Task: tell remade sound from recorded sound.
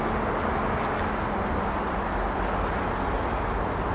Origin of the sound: recorded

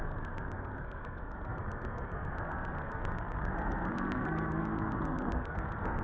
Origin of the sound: remade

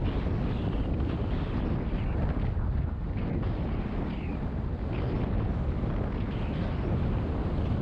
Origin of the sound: recorded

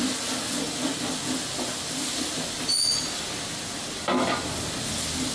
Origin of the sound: recorded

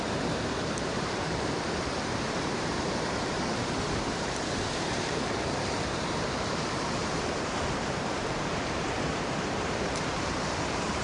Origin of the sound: remade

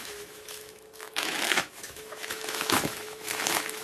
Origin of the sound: remade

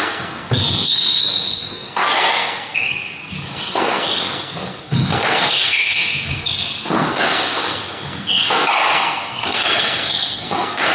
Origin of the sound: remade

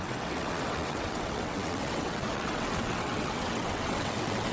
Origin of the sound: remade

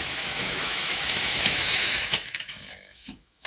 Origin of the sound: remade